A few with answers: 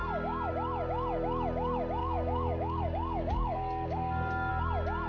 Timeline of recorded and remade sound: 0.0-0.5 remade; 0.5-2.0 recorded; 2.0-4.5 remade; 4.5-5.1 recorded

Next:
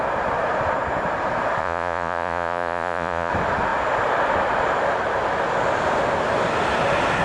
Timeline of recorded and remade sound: 0.0-1.6 recorded; 1.6-3.3 remade; 3.3-7.2 recorded

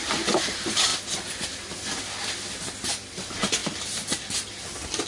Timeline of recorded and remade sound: 0.0-5.1 recorded

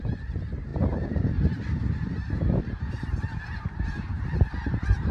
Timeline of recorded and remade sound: 0.0-5.1 remade

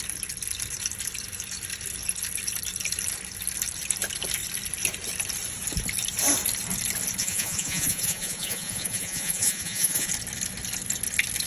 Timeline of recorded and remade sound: 0.0-7.2 recorded; 7.2-10.1 remade; 10.1-11.5 recorded